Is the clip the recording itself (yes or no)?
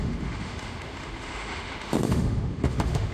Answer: no